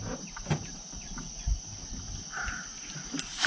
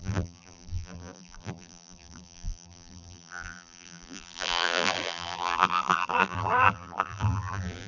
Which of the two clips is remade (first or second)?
second